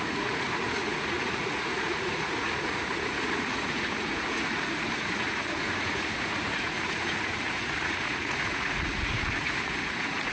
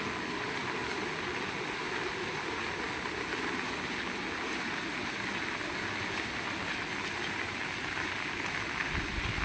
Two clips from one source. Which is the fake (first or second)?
first